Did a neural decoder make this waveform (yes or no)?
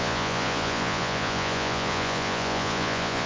yes